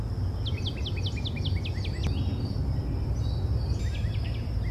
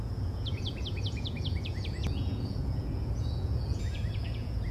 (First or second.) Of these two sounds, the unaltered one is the first